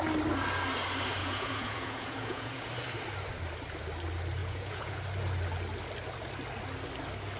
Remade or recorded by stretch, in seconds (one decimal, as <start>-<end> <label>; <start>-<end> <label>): 0.0-1.2 recorded; 1.2-2.7 remade; 2.7-4.4 recorded; 4.4-5.0 remade; 5.0-7.4 recorded